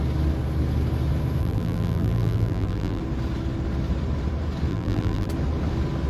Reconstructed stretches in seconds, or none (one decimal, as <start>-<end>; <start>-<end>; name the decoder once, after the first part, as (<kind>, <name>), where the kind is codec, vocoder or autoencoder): 1.4-3.0 (vocoder, BigVGAN v2); 4.7-5.3